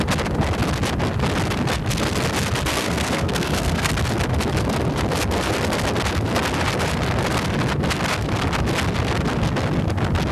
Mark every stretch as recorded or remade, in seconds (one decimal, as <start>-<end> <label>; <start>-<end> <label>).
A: 0.0-2.7 recorded; 2.7-3.9 remade; 3.9-10.3 recorded